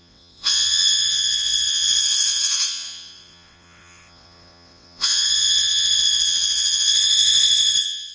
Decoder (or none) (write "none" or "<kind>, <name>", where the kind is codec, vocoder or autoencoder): vocoder, WaveNeXt